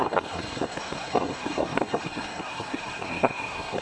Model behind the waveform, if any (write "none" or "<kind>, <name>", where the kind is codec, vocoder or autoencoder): codec, SNAC